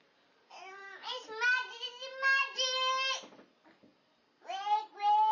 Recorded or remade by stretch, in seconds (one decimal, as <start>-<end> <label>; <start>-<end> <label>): 0.0-5.3 recorded